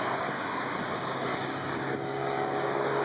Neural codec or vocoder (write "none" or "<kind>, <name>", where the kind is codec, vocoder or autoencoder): codec, DAC